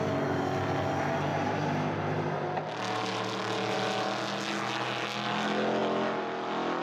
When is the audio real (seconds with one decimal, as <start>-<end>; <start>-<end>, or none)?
0.0-1.3; 2.6-6.8